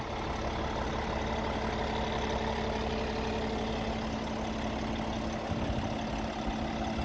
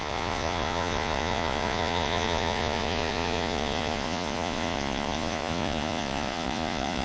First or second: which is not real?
second